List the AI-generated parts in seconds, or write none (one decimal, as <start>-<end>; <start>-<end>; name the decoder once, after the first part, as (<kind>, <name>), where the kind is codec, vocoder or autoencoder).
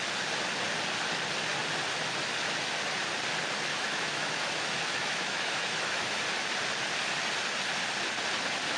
3.7-6.2 (autoencoder, DAC-VAE)